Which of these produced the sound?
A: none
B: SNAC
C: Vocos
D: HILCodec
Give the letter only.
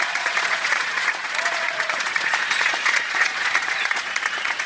C